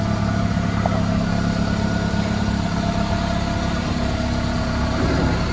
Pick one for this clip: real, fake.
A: real